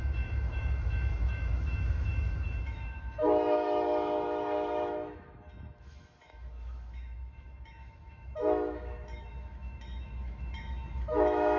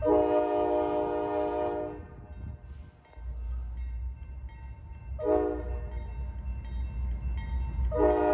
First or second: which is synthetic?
first